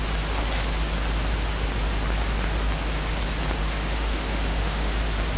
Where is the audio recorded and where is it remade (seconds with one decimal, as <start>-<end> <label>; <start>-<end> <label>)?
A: 0.0-3.6 recorded; 3.6-5.0 remade; 5.0-5.4 recorded